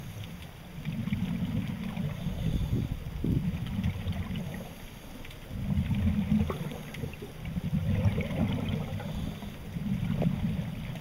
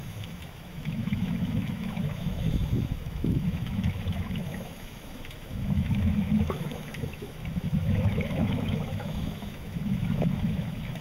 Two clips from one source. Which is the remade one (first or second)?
second